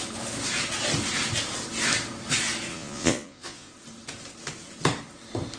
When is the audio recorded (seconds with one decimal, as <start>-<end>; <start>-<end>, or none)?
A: 0.0-2.7; 3.7-5.6